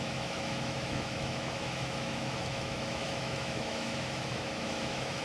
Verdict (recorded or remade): remade